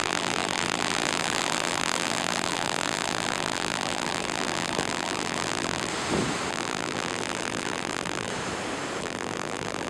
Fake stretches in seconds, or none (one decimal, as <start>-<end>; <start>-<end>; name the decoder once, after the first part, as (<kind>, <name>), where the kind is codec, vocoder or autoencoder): 0.0-5.9 (vocoder, BigVGAN v2); 6.5-8.3; 9.0-9.9